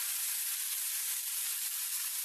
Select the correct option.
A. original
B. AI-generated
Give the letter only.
A